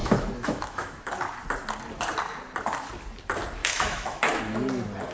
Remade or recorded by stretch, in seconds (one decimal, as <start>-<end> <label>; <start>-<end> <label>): 0.0-1.1 remade; 1.1-3.6 recorded; 3.6-4.4 remade; 4.4-5.1 recorded